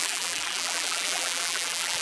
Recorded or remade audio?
remade